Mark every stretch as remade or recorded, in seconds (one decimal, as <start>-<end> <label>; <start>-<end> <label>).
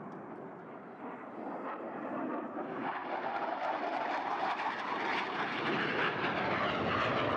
0.0-3.0 recorded; 3.0-4.6 remade; 4.6-7.4 recorded